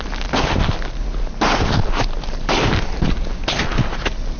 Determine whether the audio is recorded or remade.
recorded